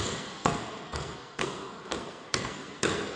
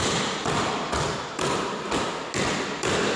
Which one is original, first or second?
second